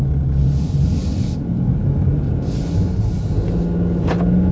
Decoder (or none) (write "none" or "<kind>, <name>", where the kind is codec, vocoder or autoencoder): none